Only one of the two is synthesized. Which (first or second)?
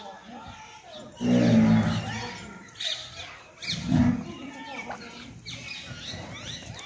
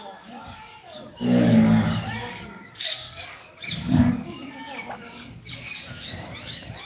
second